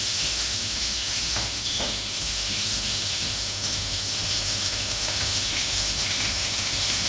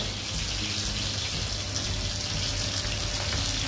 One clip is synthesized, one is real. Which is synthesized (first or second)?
first